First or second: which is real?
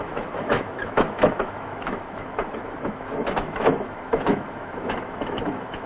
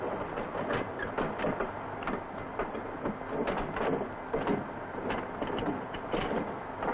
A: second